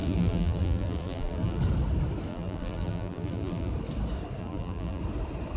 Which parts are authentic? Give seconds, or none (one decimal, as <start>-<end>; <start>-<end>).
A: 1.6-2.3; 3.7-4.4; 5.0-5.6